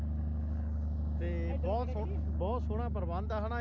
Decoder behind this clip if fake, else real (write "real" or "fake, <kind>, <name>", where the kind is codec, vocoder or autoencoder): real